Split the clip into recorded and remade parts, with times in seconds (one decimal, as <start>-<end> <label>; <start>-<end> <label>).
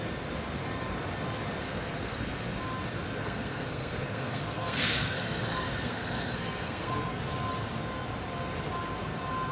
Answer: 0.0-1.6 recorded; 1.6-2.6 remade; 2.6-3.2 recorded; 3.2-7.2 remade; 7.2-9.5 recorded